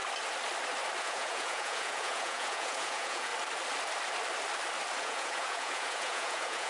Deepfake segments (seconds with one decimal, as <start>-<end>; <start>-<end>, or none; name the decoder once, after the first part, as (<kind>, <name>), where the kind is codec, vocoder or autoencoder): 1.0-3.3 (vocoder, Vocos); 5.0-6.7